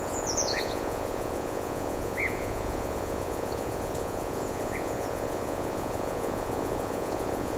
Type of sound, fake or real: fake